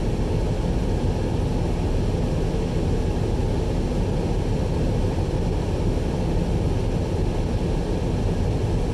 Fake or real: real